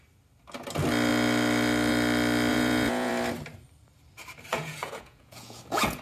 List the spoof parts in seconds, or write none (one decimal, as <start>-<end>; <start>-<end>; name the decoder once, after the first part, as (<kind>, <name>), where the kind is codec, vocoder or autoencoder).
2.5-3.1 (vocoder, Vocos); 4.5-6.0